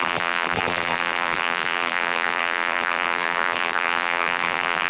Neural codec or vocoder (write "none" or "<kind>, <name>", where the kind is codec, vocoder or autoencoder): vocoder, BigVGAN v2